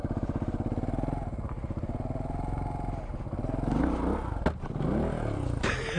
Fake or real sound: real